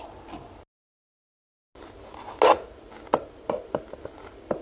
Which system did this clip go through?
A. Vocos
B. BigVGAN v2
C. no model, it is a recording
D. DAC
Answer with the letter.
C